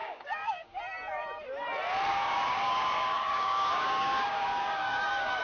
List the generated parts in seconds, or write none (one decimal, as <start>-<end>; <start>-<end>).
0.0-0.8; 2.1-5.4